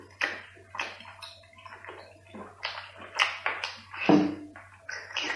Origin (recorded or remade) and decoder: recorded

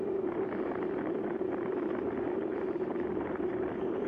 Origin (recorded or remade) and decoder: remade, vocoder, BigVGAN v2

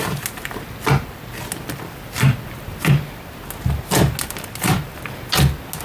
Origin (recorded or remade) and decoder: recorded